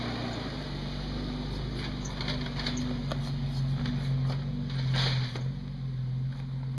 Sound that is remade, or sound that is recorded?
recorded